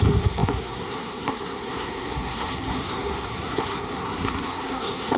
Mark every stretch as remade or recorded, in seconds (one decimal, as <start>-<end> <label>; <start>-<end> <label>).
0.0-5.2 remade